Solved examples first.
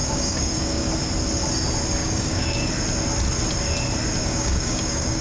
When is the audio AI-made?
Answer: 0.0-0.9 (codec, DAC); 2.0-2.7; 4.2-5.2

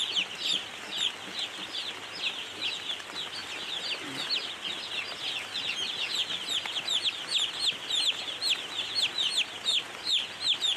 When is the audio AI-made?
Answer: none

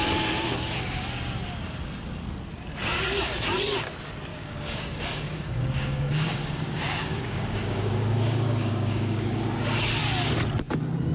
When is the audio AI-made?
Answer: 4.3-9.4 (codec, DAC)

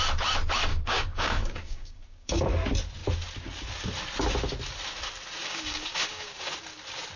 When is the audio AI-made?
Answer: 0.7-2.4 (codec, DAC); 5.4-6.5

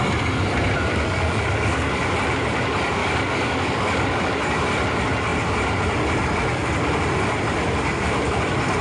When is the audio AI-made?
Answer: 0.9-2.1 (codec, DAC); 3.0-4.3

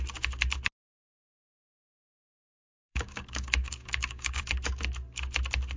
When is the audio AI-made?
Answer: 0.9-4.4 (codec, DAC)

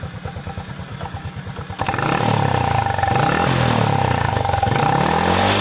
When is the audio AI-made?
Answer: 0.9-1.4 (codec, DAC); 4.3-4.8

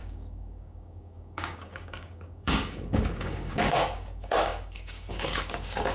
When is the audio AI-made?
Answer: 0.0-5.9 (codec, DAC)